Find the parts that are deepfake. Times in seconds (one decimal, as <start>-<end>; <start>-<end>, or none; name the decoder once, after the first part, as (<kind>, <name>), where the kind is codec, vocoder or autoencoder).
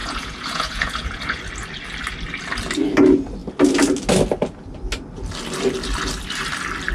0.0-1.4 (vocoder, Vocos)